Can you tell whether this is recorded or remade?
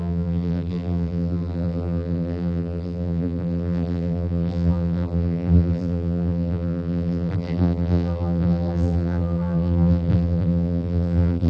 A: remade